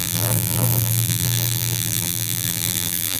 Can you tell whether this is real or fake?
fake